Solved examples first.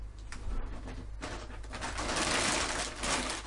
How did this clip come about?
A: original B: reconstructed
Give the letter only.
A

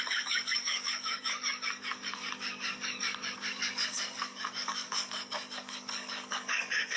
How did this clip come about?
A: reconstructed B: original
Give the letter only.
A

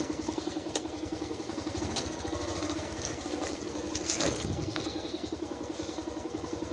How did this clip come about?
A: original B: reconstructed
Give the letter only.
B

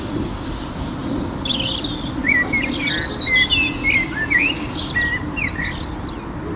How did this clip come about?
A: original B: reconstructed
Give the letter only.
A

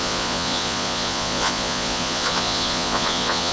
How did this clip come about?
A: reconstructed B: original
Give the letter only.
A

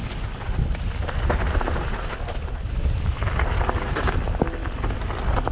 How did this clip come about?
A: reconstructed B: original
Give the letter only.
B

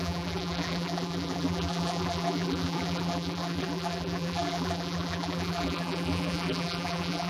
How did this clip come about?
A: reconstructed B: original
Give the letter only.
A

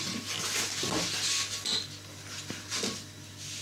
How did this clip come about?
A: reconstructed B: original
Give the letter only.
B